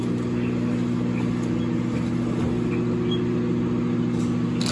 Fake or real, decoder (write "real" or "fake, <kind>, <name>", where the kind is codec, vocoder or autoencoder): real